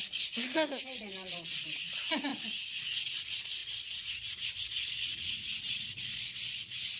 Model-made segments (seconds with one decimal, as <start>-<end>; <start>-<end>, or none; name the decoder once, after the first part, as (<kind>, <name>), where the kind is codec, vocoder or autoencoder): 0.0-7.0 (vocoder, Vocos)

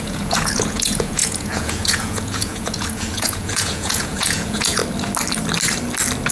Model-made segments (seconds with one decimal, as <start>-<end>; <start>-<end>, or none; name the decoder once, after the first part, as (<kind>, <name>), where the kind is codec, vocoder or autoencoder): 0.0-4.8 (vocoder, Vocos)

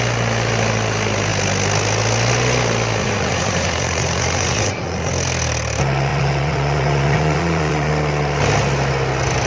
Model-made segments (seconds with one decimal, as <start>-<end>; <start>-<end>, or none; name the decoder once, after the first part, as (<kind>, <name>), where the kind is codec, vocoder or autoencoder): 3.0-5.1 (vocoder, Vocos); 6.1-7.9

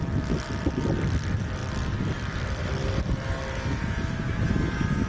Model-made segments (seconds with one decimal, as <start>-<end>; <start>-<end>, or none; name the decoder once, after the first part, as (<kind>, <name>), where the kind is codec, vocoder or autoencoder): none

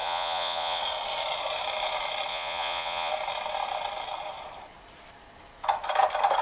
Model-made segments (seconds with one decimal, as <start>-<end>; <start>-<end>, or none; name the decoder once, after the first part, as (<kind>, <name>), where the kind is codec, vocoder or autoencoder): 0.0-0.8 (vocoder, Vocos); 2.3-3.1